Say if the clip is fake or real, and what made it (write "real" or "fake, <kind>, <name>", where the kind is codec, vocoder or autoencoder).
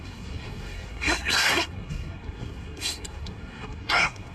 fake, codec, SNAC